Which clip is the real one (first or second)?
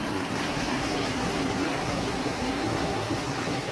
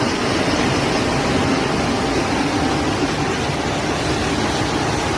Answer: second